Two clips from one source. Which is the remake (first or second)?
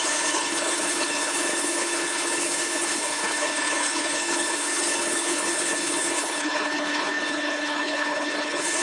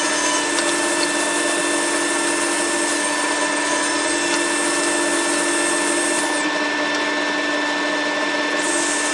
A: first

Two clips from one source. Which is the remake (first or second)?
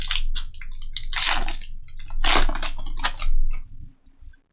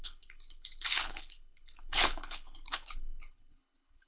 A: second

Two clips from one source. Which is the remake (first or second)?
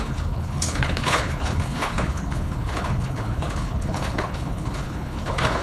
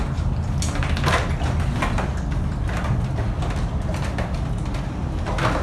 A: first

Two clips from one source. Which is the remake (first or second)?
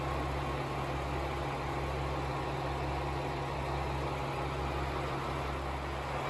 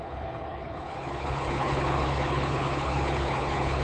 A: second